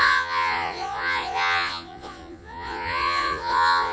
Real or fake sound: fake